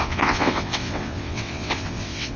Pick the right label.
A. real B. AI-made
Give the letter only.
B